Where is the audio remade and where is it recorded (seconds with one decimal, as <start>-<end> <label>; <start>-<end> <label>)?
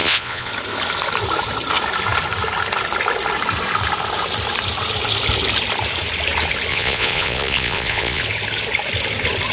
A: 0.0-0.5 remade; 0.5-6.7 recorded; 6.7-8.2 remade; 8.2-9.5 recorded